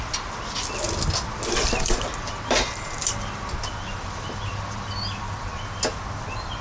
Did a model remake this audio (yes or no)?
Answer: no